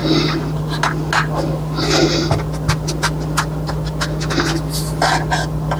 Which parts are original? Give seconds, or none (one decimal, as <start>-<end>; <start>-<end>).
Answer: 0.8-5.8